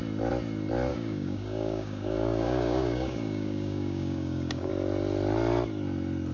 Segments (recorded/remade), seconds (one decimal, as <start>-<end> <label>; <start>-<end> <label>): 0.0-0.9 recorded; 0.9-4.7 remade; 4.7-6.3 recorded